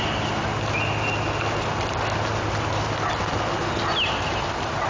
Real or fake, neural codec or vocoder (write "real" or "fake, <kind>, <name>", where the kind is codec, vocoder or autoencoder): real